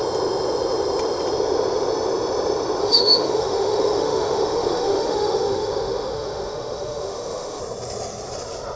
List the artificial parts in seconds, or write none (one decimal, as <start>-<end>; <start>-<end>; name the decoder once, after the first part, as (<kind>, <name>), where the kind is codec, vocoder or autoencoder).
2.8-7.6 (autoencoder, DAC-VAE)